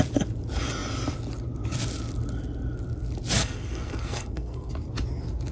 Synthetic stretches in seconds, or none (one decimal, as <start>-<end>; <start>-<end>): 3.4-4.7

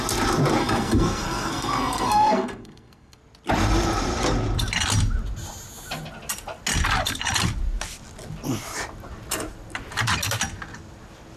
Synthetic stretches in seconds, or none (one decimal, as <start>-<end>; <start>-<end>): 0.6-3.2